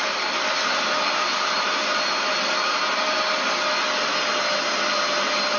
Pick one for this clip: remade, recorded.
recorded